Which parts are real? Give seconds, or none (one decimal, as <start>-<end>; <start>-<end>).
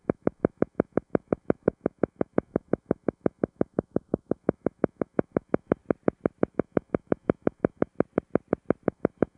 5.8-6.5; 7.9-8.9